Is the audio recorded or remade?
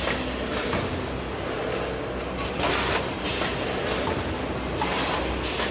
recorded